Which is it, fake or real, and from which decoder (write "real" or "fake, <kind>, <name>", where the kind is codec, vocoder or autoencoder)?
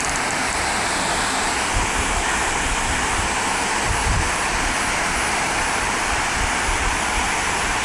real